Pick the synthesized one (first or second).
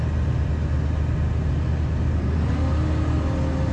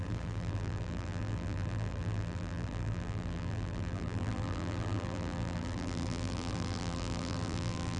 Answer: second